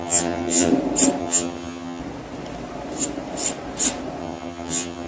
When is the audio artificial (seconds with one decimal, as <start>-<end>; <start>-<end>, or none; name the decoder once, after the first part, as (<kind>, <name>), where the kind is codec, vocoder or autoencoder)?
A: 0.0-0.7 (vocoder, HiFi-GAN); 1.2-2.0; 4.2-5.1